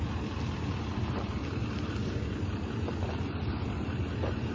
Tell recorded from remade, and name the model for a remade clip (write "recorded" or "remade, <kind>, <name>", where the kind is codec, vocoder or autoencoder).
recorded